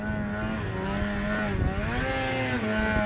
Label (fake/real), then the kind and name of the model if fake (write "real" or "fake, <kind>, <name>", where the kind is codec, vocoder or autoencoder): real